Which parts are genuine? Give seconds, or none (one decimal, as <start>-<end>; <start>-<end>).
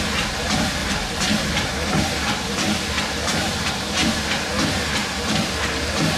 0.0-0.8; 4.5-5.0; 5.6-6.2